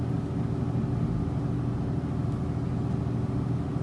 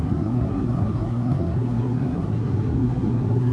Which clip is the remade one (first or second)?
second